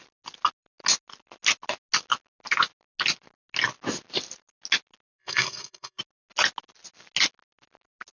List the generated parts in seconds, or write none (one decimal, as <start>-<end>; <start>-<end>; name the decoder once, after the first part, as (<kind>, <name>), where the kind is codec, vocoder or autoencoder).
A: 5.2-6.0 (codec, SNAC)